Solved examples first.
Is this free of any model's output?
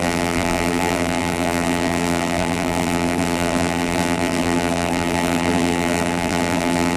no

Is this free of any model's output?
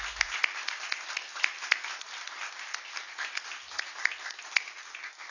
yes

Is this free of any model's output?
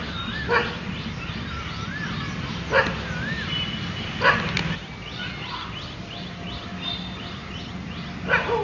yes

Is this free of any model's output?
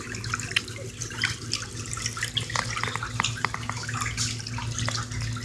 yes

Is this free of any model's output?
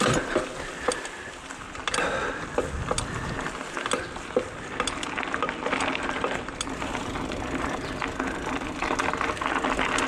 yes